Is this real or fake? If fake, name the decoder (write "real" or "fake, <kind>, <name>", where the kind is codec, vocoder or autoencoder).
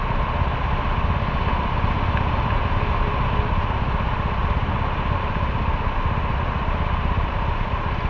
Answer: real